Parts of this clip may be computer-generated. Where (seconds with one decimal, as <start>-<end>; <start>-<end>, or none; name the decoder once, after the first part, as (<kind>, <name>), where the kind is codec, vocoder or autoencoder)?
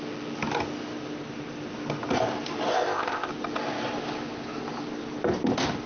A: 2.7-3.3 (codec, ZipCodec)